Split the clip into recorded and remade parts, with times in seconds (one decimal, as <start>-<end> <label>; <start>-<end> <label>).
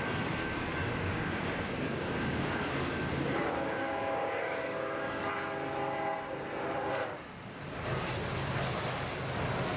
0.0-0.4 recorded; 0.4-5.3 remade; 5.3-9.8 recorded